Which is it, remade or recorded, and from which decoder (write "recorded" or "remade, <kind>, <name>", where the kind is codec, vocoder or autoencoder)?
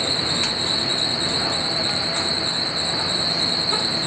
remade, vocoder, BigVGAN v2